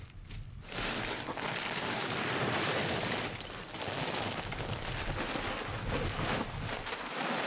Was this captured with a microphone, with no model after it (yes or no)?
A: yes